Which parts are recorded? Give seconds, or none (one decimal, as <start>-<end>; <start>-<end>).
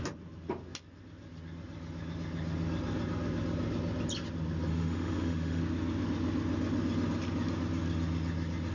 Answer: 0.0-4.7; 5.6-8.7